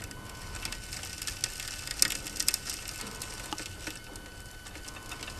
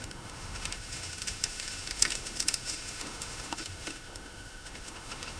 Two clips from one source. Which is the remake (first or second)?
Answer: second